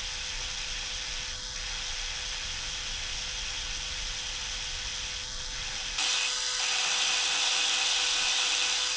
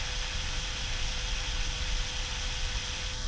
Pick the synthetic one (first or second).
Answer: second